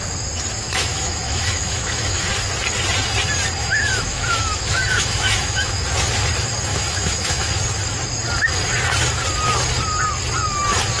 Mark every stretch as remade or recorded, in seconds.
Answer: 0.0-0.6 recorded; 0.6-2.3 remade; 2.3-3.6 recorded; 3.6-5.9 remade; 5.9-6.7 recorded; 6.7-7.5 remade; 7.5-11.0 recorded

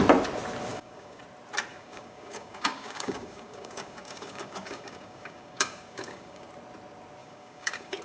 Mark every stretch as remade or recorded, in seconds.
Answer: 0.0-0.7 recorded; 0.7-1.2 remade; 1.2-1.7 recorded; 1.7-6.5 remade; 6.5-7.2 recorded; 7.2-8.0 remade

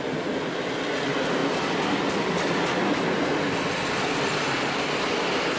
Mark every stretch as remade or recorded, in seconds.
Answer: 0.0-5.6 recorded

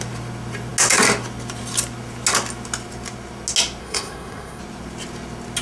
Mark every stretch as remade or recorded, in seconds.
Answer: 0.0-3.8 recorded; 3.8-4.6 remade; 4.6-5.6 recorded